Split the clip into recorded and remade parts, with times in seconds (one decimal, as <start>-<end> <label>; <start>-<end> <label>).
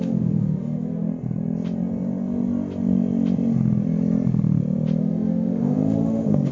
0.0-1.1 remade; 1.1-5.0 recorded; 5.0-6.5 remade